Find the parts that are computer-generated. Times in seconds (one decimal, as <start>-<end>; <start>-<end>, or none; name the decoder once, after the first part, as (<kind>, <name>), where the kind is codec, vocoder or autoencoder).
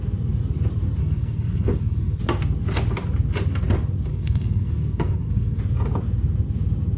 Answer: 1.0-2.2 (codec, SNAC); 4.1-5.6